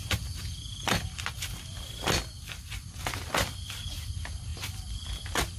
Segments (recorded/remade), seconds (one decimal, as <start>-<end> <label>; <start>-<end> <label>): 0.0-5.6 recorded